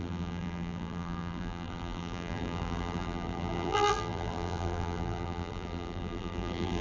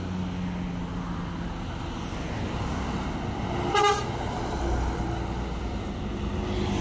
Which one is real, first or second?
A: second